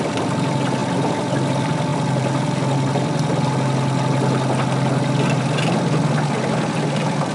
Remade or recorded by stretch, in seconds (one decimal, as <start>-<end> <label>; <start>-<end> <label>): 0.0-7.3 recorded